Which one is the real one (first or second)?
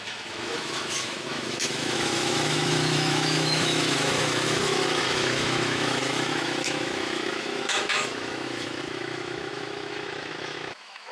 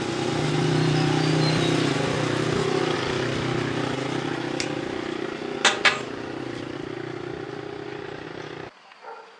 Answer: second